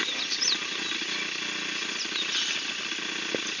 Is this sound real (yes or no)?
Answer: yes